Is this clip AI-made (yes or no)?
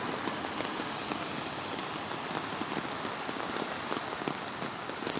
no